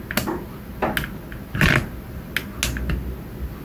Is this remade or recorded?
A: recorded